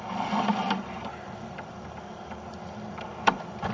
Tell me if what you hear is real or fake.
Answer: fake